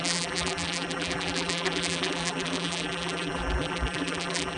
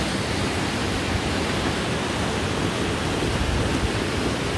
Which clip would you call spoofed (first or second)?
first